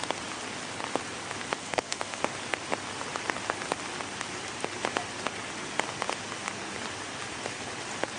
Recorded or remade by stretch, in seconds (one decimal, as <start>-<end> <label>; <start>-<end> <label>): 0.0-1.6 recorded; 1.6-2.2 remade; 2.2-8.2 recorded